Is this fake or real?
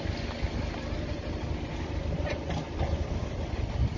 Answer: real